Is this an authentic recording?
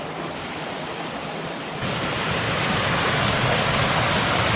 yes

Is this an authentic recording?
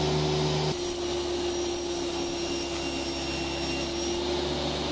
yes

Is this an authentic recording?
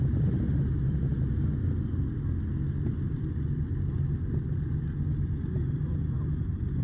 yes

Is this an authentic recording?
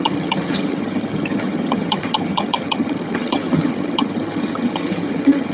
no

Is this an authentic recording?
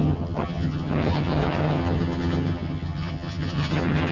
no